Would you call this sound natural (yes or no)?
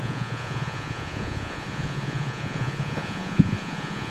no